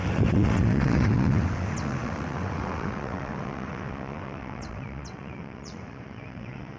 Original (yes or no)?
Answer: no